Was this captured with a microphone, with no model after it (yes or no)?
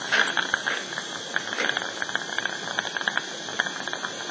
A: yes